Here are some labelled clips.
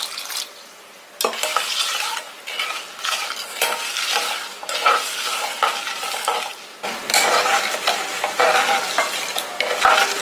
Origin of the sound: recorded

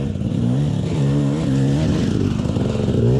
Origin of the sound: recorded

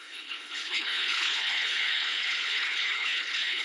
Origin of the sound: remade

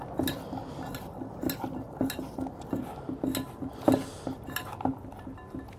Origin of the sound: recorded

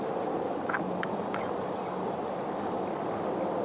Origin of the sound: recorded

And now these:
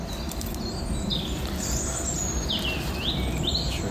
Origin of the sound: recorded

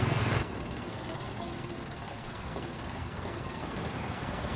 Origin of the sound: remade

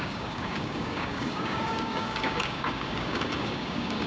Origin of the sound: remade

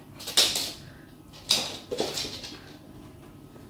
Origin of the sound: recorded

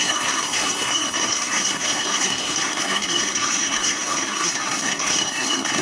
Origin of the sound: remade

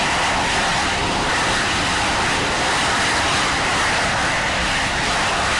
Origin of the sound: recorded